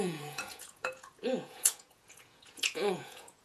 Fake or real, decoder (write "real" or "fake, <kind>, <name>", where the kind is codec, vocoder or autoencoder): fake, vocoder, Vocos